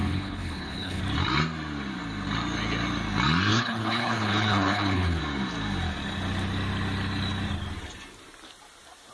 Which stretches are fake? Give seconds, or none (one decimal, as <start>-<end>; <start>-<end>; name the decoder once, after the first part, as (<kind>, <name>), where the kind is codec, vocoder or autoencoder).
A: 0.0-1.0 (codec, HILCodec); 3.5-5.2